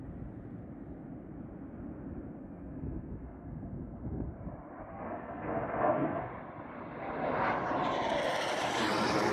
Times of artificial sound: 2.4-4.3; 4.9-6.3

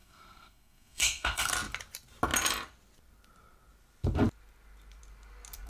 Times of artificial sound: 0.0-1.5

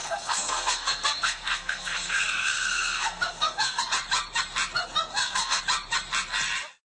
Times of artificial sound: 0.0-3.8; 5.1-5.6

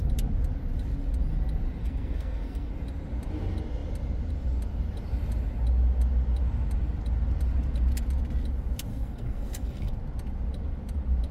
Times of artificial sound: 1.8-2.7; 8.9-9.9

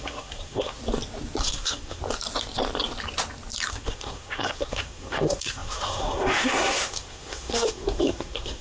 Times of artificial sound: 0.0-0.8; 1.4-2.0; 3.7-8.6

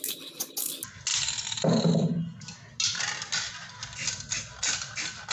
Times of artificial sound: none

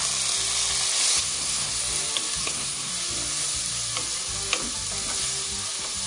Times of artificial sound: 1.1-1.7; 2.4-2.9